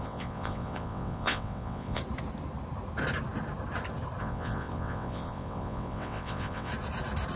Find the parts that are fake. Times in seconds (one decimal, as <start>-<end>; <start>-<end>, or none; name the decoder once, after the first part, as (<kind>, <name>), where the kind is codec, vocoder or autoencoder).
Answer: 0.0-2.0 (vocoder, WaveNeXt); 4.2-6.7